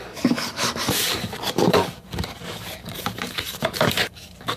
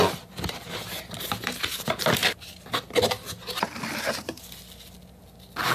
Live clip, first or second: second